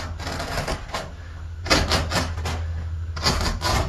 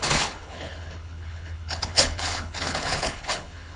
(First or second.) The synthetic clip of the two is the second